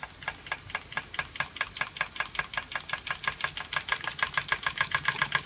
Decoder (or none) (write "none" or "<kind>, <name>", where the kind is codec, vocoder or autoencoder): none